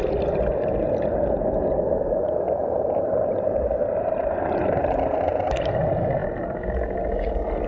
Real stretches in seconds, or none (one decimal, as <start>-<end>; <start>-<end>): 0.0-2.6; 5.1-7.7